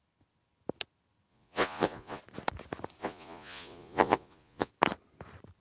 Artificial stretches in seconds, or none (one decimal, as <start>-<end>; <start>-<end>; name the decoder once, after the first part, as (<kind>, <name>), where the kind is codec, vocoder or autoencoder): 1.3-2.2 (vocoder, Vocos); 3.0-4.7

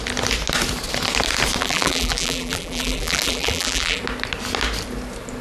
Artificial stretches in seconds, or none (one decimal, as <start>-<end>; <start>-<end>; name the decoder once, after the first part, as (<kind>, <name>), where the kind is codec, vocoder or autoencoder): 1.6-4.0 (vocoder, BigVGAN v2)